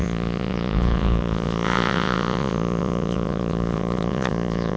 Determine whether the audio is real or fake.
fake